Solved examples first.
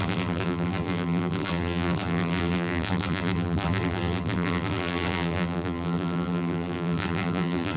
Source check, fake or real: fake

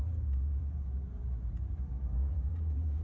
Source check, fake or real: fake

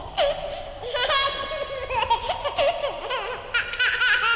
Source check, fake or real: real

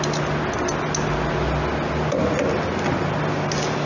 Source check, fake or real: real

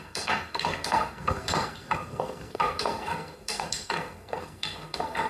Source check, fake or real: fake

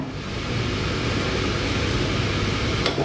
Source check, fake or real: real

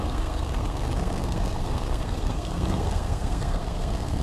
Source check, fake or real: fake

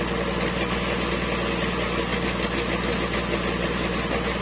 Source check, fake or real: real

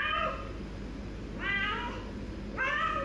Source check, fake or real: real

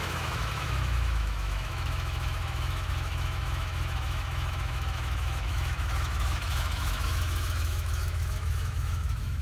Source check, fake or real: fake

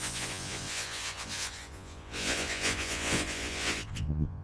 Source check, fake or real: fake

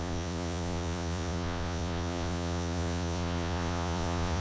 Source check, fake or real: fake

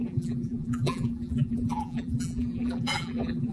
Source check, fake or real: fake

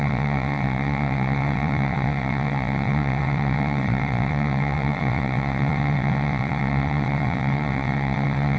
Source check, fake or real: fake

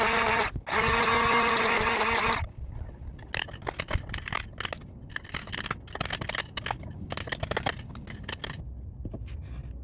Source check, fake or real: real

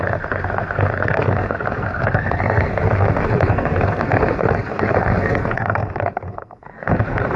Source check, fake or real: fake